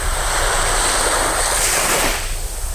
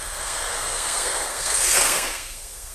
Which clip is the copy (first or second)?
second